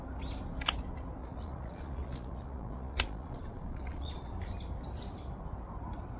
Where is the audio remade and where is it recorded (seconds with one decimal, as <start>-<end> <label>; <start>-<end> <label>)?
0.0-1.2 recorded; 1.2-4.3 remade; 4.3-6.2 recorded

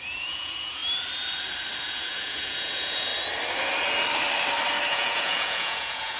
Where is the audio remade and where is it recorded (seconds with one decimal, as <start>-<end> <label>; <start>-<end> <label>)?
0.0-0.8 remade; 0.8-1.8 recorded; 1.8-3.1 remade; 3.1-4.9 recorded; 4.9-6.2 remade

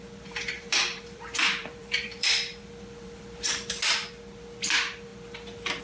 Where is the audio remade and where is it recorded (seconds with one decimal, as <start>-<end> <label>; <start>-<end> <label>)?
0.0-0.7 recorded; 0.7-3.5 remade; 3.5-5.8 recorded

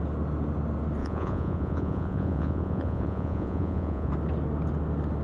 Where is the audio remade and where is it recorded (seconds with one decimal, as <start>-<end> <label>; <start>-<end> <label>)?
0.0-1.0 recorded; 1.0-4.1 remade; 4.1-5.2 recorded

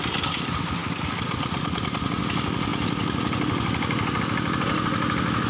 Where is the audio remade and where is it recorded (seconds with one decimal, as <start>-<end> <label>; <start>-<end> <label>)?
0.0-5.5 recorded